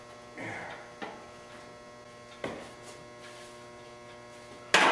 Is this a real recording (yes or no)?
yes